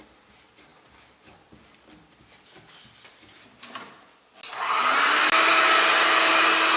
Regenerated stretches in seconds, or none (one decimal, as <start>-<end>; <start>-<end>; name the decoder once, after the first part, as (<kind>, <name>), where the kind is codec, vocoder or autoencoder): none

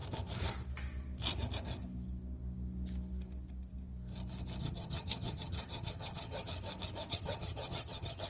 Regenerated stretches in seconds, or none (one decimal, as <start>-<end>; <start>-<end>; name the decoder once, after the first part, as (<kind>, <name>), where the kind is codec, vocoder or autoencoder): 4.6-6.5 (vocoder, HiFi-GAN); 7.1-8.3

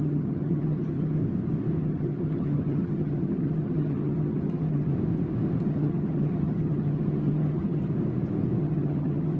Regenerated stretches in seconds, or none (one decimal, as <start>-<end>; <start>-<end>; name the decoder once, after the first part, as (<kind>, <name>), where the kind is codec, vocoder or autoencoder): 0.0-1.2 (vocoder, HiFi-GAN); 1.8-4.9; 5.6-7.9; 8.6-9.4

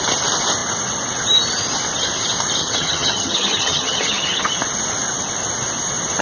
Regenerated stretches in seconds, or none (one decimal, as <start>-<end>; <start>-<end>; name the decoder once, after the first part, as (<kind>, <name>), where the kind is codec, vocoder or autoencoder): 2.6-4.5 (vocoder, HiFi-GAN)

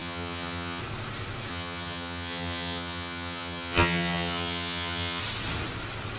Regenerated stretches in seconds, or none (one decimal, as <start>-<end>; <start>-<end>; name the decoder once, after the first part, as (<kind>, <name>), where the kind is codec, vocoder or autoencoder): 0.0-0.8 (vocoder, HiFi-GAN); 1.5-5.2

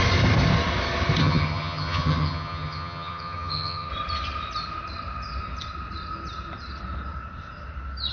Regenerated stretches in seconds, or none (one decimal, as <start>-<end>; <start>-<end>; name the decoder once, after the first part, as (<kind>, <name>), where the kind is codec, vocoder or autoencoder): 1.2-3.9 (vocoder, HiFi-GAN)

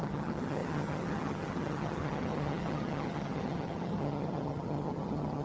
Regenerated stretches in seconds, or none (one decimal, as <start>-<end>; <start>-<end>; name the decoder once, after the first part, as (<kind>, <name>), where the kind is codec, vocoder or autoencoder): 0.0-5.4 (vocoder, HiFi-GAN)

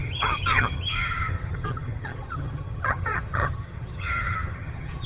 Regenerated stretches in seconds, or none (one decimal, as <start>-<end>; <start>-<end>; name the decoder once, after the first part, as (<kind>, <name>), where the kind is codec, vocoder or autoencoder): 0.0-5.1 (vocoder, HiFi-GAN)